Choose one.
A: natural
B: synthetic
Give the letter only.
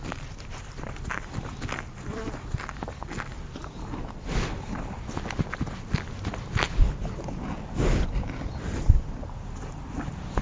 A